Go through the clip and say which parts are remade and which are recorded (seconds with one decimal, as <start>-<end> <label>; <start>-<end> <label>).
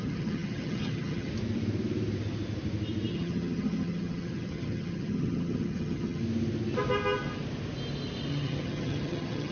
0.0-1.3 remade; 1.3-3.1 recorded; 3.1-6.2 remade; 6.2-8.3 recorded; 8.3-9.5 remade